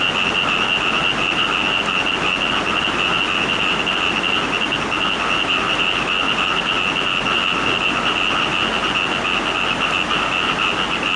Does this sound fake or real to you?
real